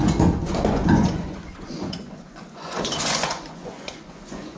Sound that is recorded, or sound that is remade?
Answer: remade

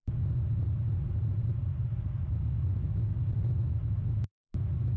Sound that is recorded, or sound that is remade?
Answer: recorded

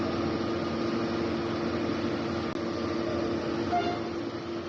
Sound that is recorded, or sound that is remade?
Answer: recorded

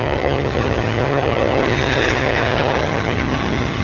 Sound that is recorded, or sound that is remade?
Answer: remade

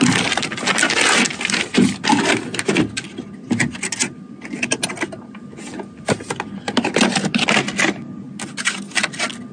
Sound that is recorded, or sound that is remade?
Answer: recorded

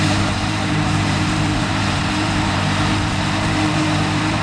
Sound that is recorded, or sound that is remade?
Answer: remade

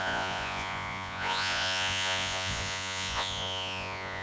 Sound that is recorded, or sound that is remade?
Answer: remade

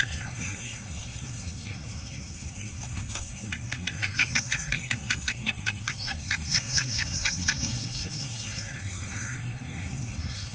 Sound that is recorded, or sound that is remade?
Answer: remade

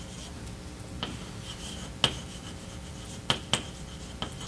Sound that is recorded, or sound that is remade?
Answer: recorded